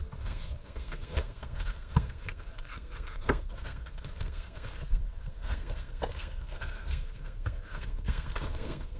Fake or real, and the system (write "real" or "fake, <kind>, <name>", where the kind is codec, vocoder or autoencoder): fake, codec, SNAC